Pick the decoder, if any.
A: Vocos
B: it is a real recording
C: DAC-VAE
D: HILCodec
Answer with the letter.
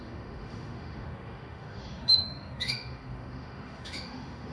C